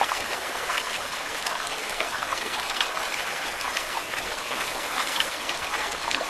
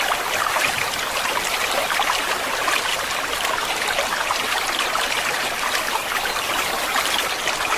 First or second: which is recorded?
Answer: second